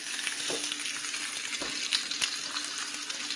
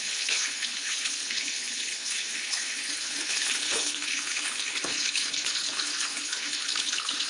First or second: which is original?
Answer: first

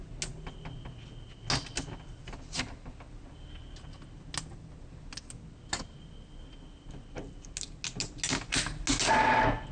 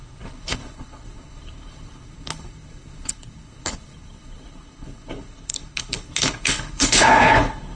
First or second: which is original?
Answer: first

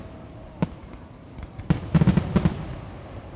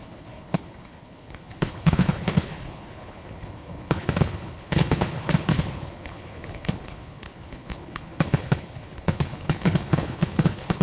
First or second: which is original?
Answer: first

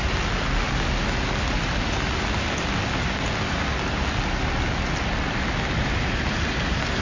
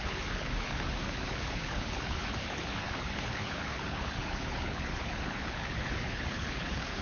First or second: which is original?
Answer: first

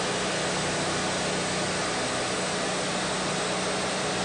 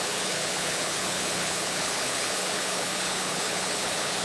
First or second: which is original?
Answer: first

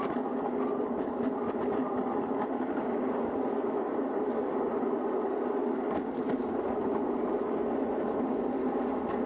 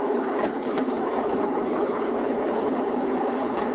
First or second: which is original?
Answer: first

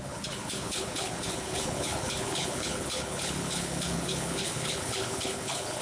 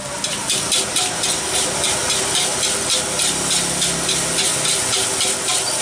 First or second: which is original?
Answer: second